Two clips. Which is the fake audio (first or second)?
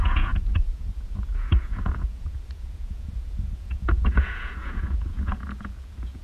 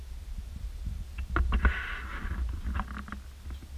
first